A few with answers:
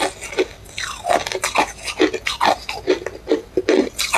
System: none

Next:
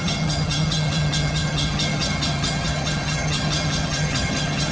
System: vocoder, HiFi-GAN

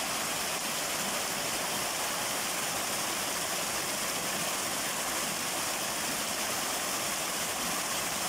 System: none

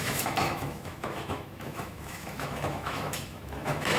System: autoencoder, DAC-VAE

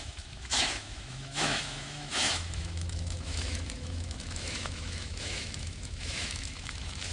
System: autoencoder, DAC-VAE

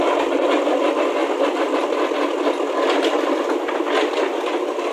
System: none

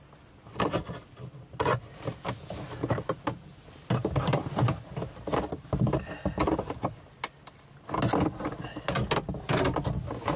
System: none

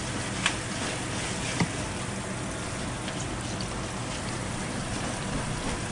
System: none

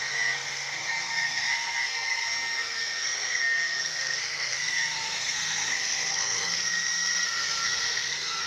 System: codec, SNAC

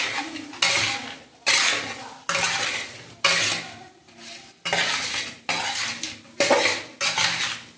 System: none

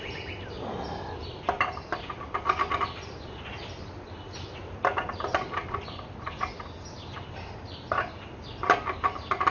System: none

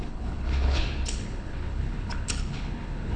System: codec, HILCodec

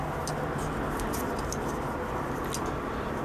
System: none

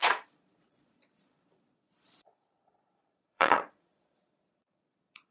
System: vocoder, Vocos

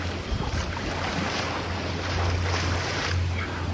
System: none